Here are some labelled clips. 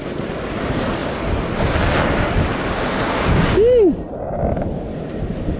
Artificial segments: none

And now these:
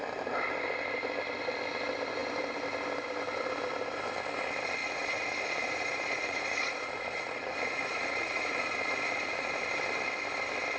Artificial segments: 4.8-9.5 (vocoder, Vocos)

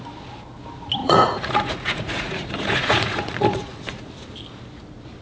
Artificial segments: 1.0-4.1 (vocoder, Vocos)

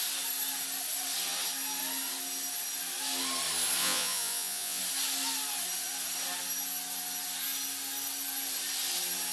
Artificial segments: 3.8-4.8 (vocoder, Vocos)